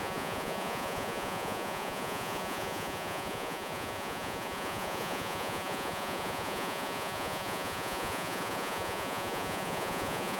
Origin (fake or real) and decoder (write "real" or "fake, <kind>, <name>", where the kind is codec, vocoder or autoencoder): fake, vocoder, Vocos